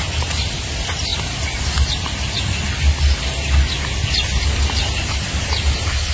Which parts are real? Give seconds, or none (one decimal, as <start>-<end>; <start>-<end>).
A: 0.0-6.1